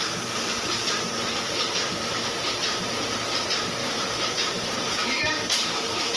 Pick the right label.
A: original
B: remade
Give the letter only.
B